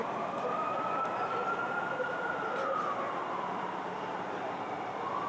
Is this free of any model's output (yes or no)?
yes